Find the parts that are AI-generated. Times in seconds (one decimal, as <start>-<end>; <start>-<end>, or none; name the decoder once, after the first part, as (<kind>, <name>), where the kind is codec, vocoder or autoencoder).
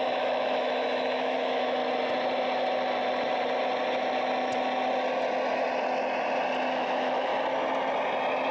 0.0-1.8 (autoencoder, DAC-VAE); 6.7-7.3